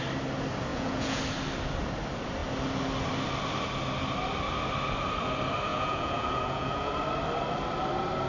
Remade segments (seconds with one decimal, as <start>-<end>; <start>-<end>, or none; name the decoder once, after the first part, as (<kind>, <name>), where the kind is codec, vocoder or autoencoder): 0.7-1.2 (vocoder, Vocos); 5.7-6.9